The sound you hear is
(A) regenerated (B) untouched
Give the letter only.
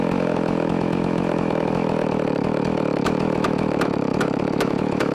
A